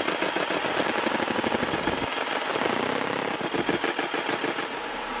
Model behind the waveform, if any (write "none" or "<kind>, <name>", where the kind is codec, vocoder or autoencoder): none